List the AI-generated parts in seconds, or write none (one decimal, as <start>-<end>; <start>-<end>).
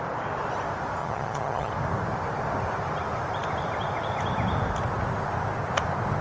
1.0-1.7